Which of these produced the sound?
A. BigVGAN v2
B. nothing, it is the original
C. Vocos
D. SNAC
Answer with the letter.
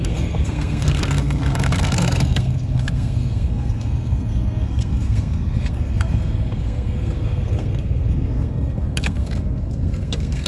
D